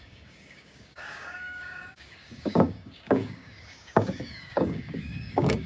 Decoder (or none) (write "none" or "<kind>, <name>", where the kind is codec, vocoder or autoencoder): codec, DAC